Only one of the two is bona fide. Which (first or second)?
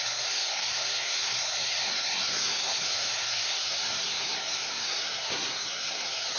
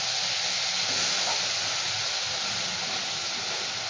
second